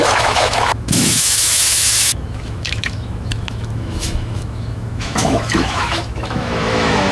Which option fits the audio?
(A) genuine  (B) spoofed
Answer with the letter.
B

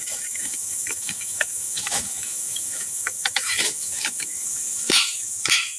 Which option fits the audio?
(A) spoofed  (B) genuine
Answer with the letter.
A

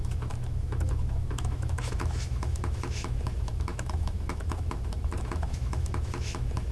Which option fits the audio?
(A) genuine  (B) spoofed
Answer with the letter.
B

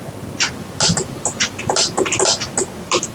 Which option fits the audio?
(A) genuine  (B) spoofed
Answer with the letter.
A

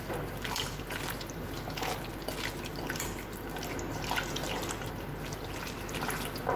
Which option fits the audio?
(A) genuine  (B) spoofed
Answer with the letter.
A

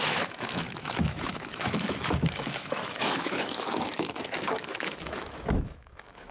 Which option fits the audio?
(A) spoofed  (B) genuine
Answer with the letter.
A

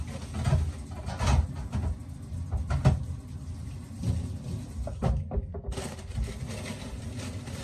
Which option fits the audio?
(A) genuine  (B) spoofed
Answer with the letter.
A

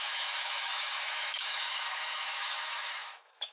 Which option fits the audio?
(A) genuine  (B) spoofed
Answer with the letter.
B